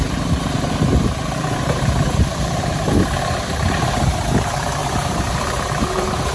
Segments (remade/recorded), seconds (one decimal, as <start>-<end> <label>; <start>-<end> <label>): 0.0-4.8 remade; 4.8-5.3 recorded; 5.3-6.3 remade

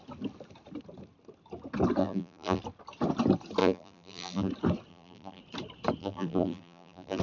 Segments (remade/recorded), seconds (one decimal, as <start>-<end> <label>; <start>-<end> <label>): 0.0-2.0 recorded; 2.0-2.6 remade; 2.6-3.6 recorded; 3.6-4.5 remade; 4.5-4.9 recorded; 4.9-5.4 remade; 5.4-6.0 recorded; 6.0-7.2 remade

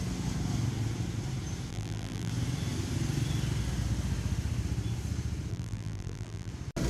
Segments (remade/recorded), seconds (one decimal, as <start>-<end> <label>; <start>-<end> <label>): 0.0-1.7 recorded; 1.7-2.3 remade; 2.3-5.5 recorded; 5.5-6.5 remade; 6.5-6.9 recorded